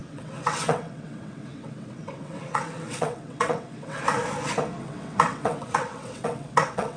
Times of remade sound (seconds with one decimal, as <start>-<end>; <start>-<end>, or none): 0.0-4.0; 4.8-7.0